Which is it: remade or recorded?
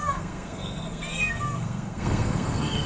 remade